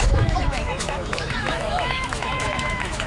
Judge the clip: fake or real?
fake